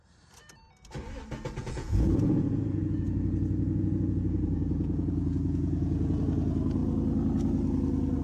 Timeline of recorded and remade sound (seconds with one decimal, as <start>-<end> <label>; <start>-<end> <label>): 0.0-1.6 recorded; 1.6-6.2 remade; 6.2-8.2 recorded